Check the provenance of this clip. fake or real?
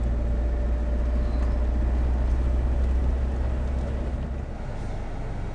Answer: real